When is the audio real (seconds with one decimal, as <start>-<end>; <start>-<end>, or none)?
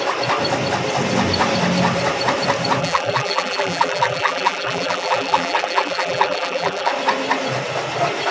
0.0-2.8; 6.9-8.3